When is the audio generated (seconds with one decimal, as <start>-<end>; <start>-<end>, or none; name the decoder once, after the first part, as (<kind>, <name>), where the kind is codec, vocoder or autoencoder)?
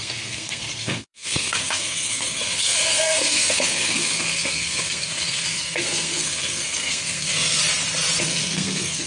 0.0-7.6 (codec, SNAC); 8.2-9.1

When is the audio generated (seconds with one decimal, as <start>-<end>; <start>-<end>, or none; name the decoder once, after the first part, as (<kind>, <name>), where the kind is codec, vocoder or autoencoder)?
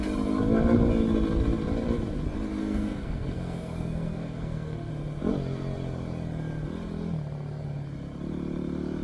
2.6-4.9 (codec, SNAC)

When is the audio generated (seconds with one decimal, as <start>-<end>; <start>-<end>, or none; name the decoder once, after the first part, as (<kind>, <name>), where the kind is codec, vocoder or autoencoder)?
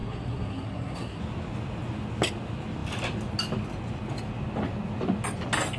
0.0-1.2 (codec, SNAC)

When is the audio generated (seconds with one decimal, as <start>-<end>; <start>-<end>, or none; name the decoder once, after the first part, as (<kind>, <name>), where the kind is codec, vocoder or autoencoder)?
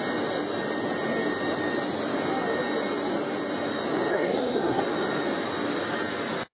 4.1-4.8 (codec, SNAC)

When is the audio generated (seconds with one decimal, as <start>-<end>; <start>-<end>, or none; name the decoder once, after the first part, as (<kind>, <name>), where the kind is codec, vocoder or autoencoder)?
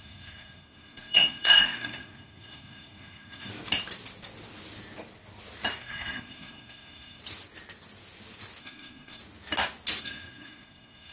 0.0-3.5 (codec, SNAC); 5.8-7.2; 8.6-9.2; 10.0-11.1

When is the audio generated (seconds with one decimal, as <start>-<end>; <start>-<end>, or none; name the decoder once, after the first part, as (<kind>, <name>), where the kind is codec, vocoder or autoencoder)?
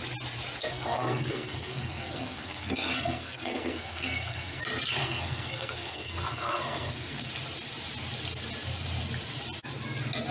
0.6-4.6 (codec, SNAC); 5.0-7.3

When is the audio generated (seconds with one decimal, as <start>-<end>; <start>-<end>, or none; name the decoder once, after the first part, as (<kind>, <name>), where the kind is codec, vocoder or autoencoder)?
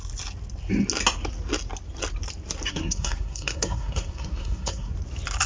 2.7-4.9 (codec, SNAC)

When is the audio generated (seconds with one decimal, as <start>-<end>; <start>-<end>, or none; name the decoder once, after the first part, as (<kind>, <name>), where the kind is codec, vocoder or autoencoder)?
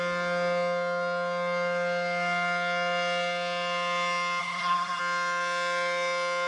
4.4-5.0 (codec, SNAC)